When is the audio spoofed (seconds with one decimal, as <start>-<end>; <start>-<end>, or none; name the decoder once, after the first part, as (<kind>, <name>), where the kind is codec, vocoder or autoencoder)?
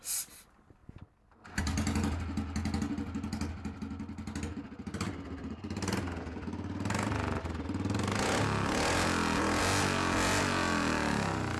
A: none